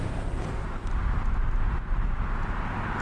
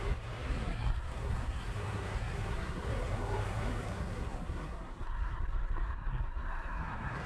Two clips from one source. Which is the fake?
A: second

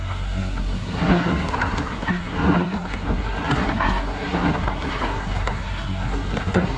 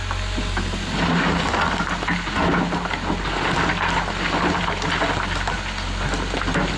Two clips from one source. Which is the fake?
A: first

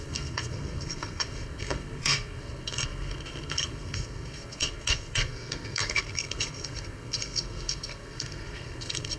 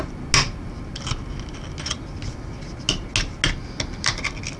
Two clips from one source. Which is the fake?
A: first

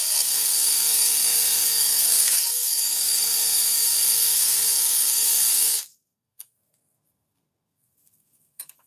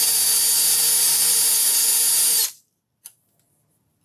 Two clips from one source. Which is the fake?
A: first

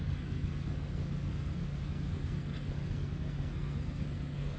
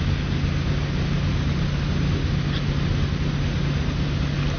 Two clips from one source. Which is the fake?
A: first